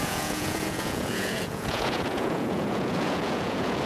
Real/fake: fake